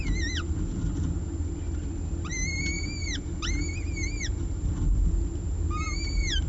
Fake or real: real